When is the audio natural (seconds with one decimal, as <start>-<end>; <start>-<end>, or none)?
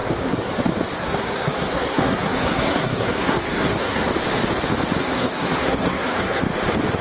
0.5-1.0; 4.1-5.0; 6.4-7.0